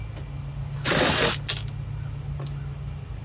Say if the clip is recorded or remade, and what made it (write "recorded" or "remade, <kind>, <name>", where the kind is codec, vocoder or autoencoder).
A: recorded